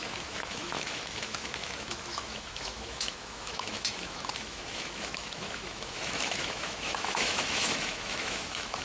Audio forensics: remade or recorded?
remade